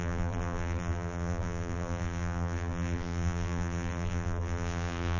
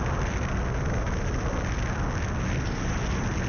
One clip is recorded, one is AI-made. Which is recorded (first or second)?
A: second